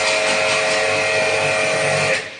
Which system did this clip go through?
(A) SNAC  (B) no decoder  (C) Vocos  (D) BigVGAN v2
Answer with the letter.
B